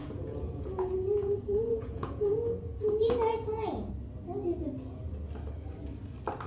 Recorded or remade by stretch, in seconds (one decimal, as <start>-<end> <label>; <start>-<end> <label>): 0.0-3.9 remade; 3.9-6.5 recorded